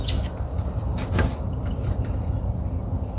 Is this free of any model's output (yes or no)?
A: yes